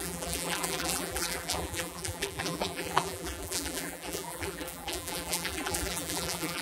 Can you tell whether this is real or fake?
fake